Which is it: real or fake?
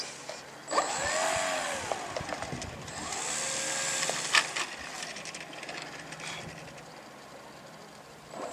real